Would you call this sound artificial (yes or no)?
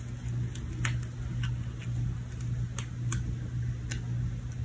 no